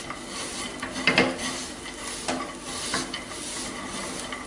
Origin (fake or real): real